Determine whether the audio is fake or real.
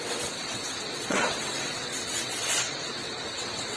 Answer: fake